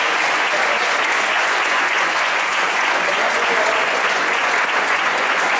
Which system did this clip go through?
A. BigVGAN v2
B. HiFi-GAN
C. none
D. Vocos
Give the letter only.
D